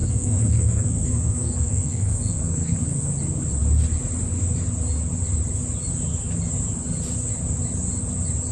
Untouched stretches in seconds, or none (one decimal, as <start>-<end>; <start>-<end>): 3.1-8.5